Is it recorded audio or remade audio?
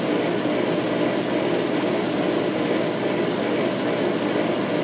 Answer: recorded